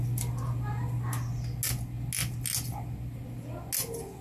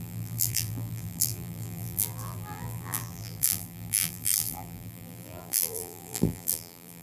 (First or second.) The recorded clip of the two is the first